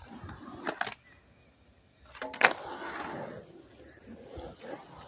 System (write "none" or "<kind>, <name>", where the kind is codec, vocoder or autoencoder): none